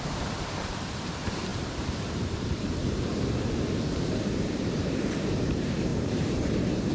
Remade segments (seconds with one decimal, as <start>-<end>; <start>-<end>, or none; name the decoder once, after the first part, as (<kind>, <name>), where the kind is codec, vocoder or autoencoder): 0.0-2.8 (vocoder, BigVGAN v2); 4.3-6.9